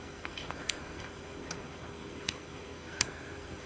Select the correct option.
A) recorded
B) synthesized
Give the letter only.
B